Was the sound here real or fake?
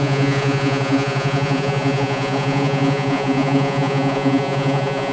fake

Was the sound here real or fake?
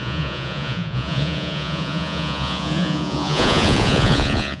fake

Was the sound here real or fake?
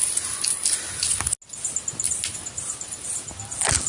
real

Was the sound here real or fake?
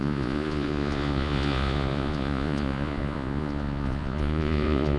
fake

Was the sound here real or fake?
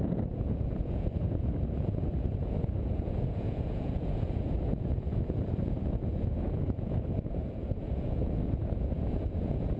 fake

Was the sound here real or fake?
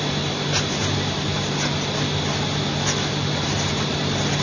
real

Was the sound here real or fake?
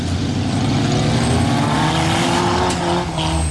real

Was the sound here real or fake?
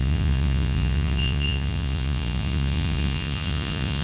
fake